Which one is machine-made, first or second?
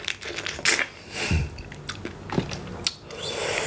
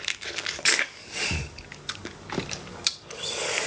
second